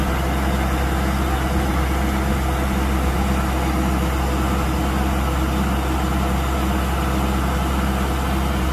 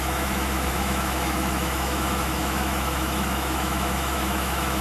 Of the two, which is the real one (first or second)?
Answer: first